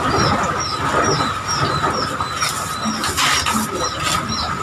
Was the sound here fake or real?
real